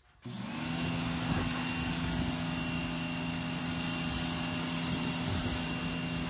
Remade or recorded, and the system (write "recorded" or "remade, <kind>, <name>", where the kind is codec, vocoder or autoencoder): recorded